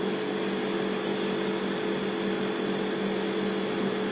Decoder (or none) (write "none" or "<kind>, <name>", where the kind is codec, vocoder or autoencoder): none